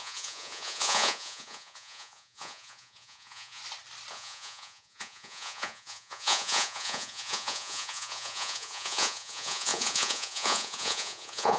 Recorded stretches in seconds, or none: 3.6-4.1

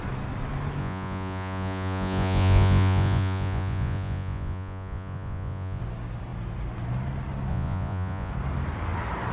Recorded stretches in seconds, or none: 0.0-0.8; 5.8-7.5; 8.3-9.3

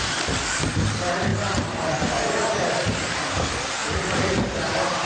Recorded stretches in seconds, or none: 0.0-5.1

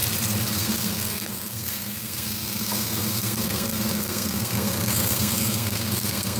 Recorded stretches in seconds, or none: 0.0-0.5

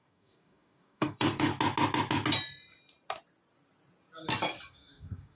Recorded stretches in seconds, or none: 1.5-4.7

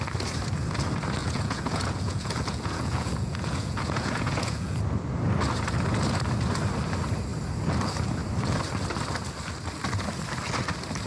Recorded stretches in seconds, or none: 0.0-1.2; 4.8-11.1

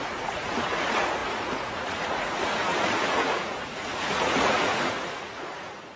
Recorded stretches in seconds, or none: none